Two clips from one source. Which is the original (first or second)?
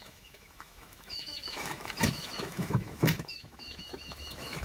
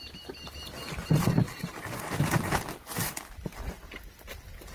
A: second